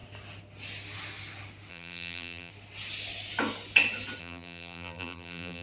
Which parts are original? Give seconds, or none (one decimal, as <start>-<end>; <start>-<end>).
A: 0.0-1.7; 2.5-4.2